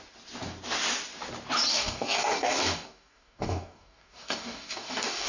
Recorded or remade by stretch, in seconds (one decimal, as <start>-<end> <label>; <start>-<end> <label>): 0.0-1.7 recorded; 1.7-5.3 remade